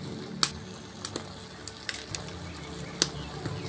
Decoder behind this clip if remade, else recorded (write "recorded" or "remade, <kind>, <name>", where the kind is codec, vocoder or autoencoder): recorded